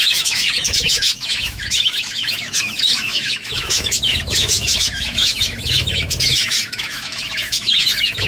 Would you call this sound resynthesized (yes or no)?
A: yes